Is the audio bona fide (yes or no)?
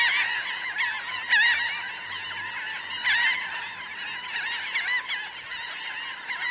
yes